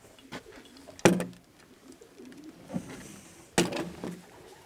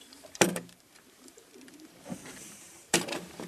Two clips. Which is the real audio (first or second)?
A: first